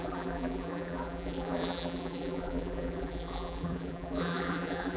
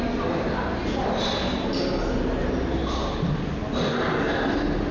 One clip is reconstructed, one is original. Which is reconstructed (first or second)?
first